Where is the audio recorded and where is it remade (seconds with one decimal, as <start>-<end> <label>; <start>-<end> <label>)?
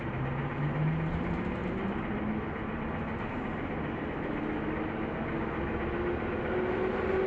0.0-7.3 recorded